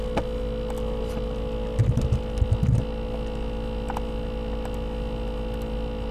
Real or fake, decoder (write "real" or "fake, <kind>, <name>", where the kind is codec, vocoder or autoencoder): real